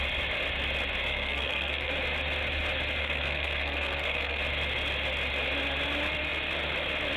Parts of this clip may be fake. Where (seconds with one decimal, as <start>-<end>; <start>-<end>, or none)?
1.1-1.9; 3.0-4.4